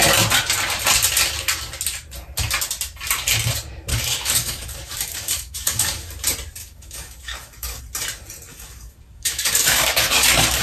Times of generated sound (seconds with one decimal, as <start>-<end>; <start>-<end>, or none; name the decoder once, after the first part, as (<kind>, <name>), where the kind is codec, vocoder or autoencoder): 3.9-6.1 (codec, DAC); 6.6-7.8; 8.5-10.6